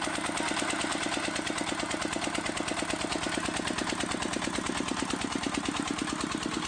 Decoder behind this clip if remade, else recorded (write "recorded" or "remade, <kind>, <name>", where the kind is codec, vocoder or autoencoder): recorded